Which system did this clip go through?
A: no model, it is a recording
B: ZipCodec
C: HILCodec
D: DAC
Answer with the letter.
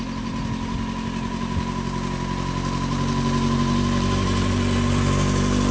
A